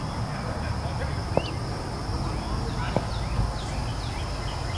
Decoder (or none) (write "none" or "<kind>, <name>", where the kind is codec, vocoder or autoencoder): none